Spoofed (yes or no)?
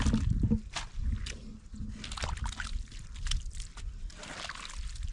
no